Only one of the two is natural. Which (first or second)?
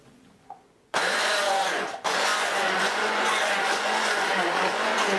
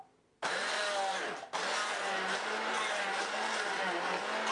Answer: second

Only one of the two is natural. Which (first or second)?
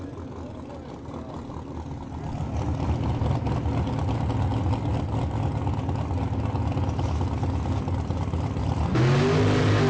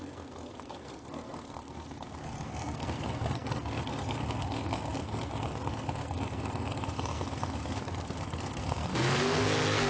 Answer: first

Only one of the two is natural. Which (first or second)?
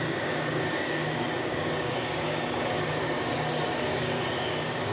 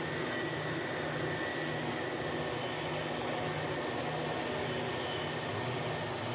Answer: second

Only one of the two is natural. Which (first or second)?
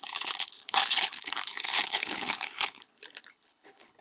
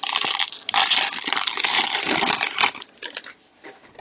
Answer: second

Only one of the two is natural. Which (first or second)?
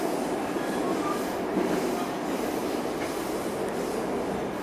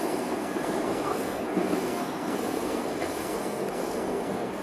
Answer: first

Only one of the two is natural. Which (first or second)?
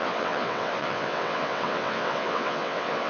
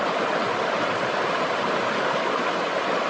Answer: second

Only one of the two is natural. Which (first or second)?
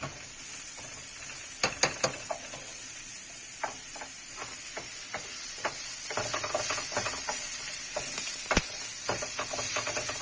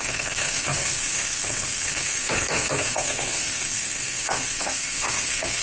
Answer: first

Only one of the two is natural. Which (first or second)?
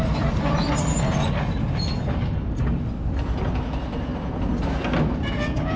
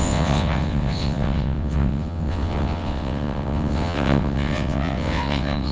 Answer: first